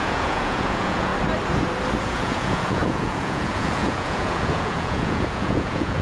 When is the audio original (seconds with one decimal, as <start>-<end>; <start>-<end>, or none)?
1.1-2.0